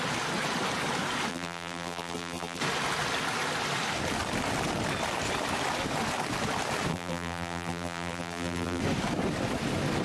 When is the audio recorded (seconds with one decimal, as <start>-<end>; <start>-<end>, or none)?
0.0-1.3; 2.6-6.9; 8.8-10.0